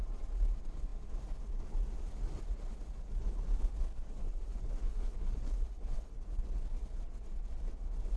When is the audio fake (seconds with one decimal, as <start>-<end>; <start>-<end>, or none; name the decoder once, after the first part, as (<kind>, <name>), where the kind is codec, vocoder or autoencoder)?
4.2-6.1 (codec, HILCodec)